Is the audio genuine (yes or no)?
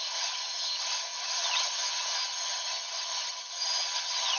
no